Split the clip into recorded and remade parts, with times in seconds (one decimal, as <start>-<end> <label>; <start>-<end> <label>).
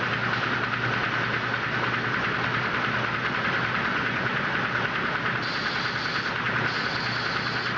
0.0-3.9 recorded; 3.9-4.4 remade; 4.4-7.8 recorded